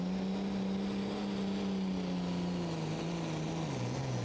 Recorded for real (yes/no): yes